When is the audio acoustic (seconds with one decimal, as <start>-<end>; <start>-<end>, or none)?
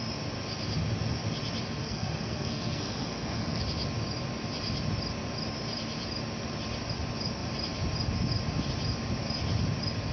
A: 0.0-1.8; 3.6-10.1